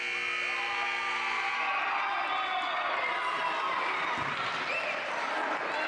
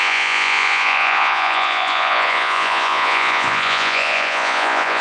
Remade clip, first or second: second